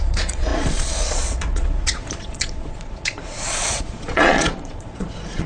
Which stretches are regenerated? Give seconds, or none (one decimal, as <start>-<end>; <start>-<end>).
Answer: 0.0-5.5